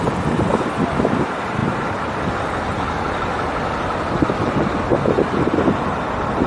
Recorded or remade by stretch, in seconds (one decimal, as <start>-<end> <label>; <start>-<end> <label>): 0.0-6.5 recorded